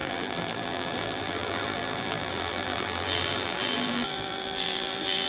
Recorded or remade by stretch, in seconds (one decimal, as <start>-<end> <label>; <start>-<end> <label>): 0.0-5.3 remade